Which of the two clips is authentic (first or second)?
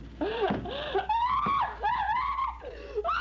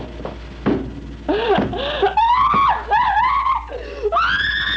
second